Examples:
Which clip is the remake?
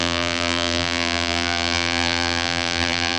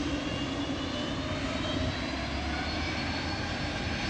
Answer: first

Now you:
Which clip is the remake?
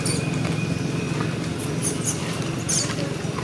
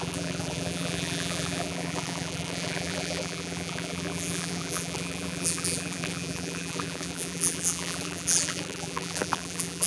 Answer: second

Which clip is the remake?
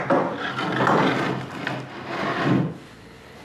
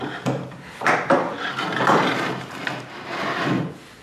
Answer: second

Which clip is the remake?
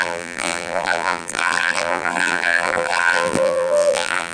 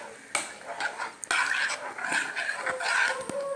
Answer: first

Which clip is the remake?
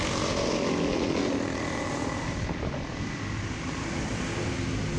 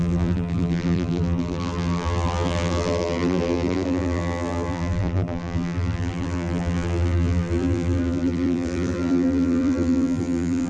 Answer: second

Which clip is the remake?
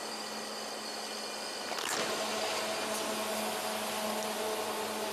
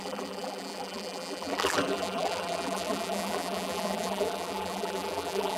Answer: second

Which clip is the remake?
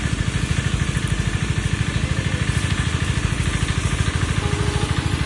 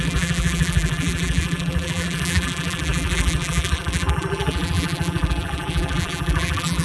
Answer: second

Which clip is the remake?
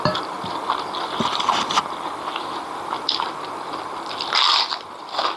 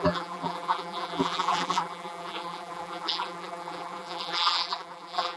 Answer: second